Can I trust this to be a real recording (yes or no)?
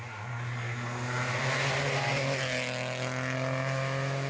yes